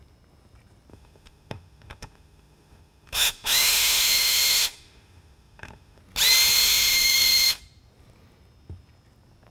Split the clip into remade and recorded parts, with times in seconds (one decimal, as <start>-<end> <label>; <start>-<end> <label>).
0.0-0.9 recorded; 0.9-6.0 remade; 6.0-6.5 recorded; 6.5-7.6 remade; 7.6-9.5 recorded